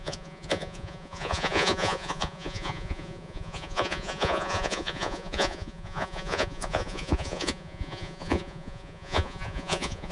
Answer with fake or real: fake